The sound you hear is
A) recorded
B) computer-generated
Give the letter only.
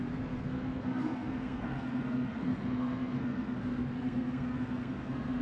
B